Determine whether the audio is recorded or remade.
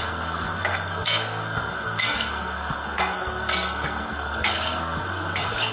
remade